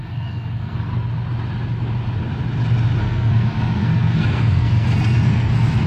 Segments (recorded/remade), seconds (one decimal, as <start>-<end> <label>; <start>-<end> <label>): 0.0-0.9 remade; 0.9-3.0 recorded; 3.0-5.9 remade